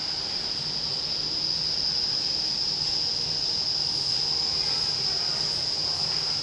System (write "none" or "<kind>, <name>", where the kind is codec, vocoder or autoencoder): none